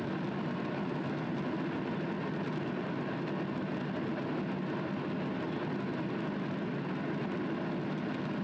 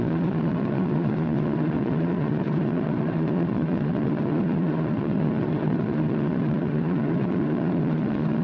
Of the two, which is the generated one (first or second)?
second